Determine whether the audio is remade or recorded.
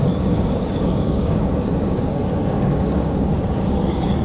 remade